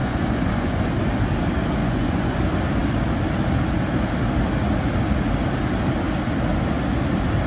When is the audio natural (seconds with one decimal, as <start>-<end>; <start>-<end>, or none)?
0.8-1.8; 2.4-7.5